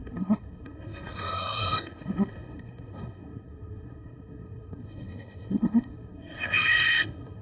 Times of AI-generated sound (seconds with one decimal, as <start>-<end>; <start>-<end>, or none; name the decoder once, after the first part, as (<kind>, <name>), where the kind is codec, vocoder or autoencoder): 0.0-7.4 (codec, SNAC)